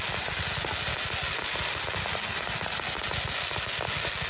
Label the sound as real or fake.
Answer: real